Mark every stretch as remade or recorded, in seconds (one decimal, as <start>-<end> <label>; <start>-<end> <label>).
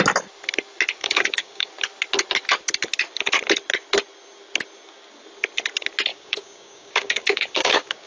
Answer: 0.0-1.0 recorded; 1.0-1.7 remade; 1.7-6.1 recorded; 6.1-8.1 remade